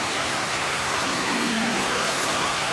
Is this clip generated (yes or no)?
yes